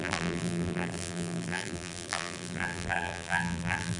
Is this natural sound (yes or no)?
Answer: no